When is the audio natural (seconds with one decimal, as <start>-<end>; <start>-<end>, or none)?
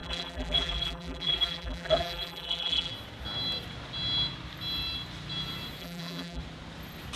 2.9-5.8; 6.4-7.2